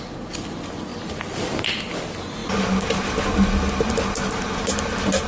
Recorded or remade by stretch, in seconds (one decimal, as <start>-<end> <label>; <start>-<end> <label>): 0.0-5.3 recorded